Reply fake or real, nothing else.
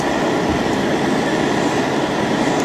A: real